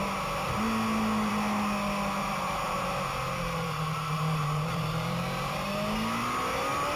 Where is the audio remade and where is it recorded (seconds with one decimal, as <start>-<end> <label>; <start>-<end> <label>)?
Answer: 0.0-2.2 recorded; 2.2-5.7 remade; 5.7-7.0 recorded